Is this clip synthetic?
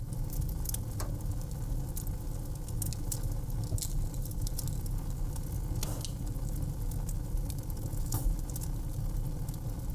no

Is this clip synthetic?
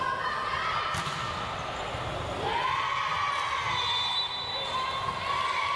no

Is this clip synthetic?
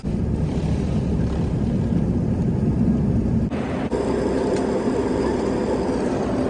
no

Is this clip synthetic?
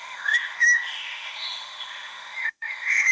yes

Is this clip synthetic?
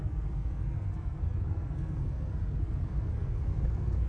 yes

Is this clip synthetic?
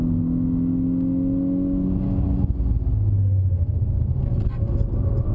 no